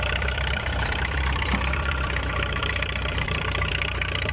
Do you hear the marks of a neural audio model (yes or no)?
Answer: yes